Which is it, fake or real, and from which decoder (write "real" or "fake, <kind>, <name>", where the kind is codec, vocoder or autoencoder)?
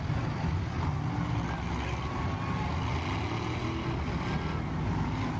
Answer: real